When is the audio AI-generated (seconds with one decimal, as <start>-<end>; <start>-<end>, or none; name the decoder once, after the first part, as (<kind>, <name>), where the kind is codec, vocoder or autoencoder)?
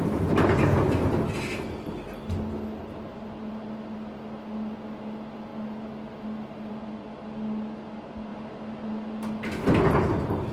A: none